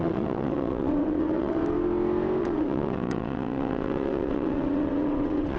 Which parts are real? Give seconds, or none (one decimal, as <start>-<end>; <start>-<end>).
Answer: 1.6-2.4